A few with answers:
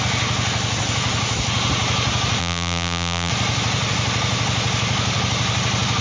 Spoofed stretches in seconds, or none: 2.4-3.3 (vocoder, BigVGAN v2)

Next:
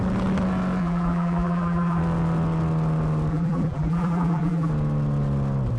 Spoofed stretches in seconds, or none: 0.8-2.0 (vocoder, BigVGAN v2); 3.3-4.7